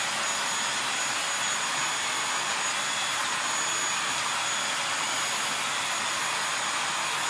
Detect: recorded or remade recorded